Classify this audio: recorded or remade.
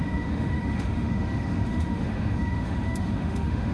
remade